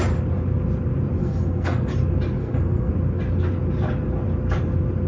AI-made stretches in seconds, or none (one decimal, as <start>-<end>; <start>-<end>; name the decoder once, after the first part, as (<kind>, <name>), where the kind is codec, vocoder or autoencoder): 1.2-1.9 (codec, SNAC); 2.4-2.9